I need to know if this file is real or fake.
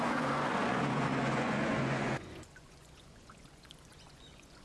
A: fake